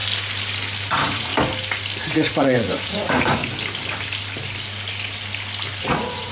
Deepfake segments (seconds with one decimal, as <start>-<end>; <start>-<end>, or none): 0.9-1.3; 2.0-3.4; 5.8-6.3